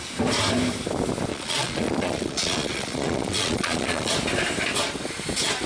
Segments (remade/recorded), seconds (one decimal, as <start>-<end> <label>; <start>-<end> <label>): 0.0-1.3 recorded; 1.3-4.1 remade; 4.1-5.7 recorded